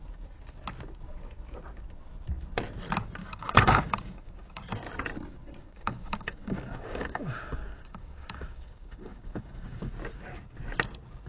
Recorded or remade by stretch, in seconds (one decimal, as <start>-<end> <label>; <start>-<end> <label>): 0.0-3.2 recorded; 3.2-4.6 remade; 4.6-5.6 recorded; 5.6-9.9 remade; 9.9-11.3 recorded